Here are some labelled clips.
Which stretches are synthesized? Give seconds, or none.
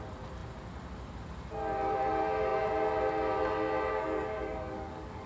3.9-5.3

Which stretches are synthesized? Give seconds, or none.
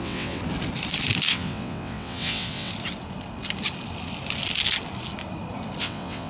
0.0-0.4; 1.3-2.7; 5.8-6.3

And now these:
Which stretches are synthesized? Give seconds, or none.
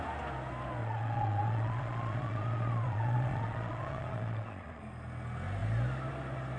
0.8-4.8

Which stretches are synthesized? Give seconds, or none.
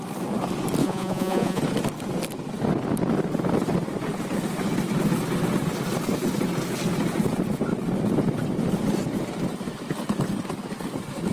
0.8-1.6